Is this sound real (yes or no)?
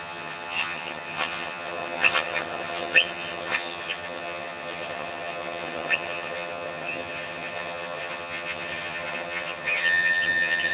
no